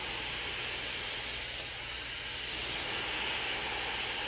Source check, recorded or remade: recorded